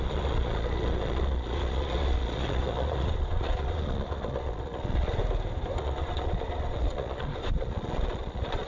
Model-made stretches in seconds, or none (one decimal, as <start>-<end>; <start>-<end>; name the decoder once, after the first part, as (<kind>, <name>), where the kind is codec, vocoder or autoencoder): 0.0-5.2 (vocoder, Vocos); 5.8-8.7